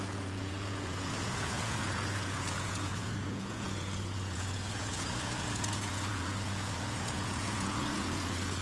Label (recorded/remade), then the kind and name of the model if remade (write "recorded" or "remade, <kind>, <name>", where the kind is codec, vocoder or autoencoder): remade, vocoder, Vocos